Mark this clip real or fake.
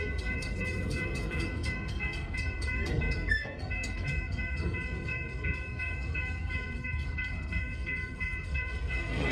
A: fake